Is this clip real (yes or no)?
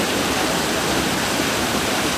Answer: yes